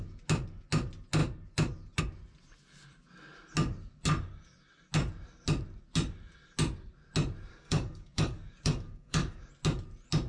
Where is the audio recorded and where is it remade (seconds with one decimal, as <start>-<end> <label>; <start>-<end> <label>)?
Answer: 0.0-7.5 recorded; 7.5-9.5 remade; 9.5-10.3 recorded